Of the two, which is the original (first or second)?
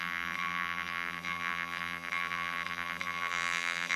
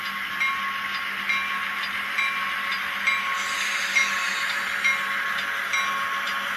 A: second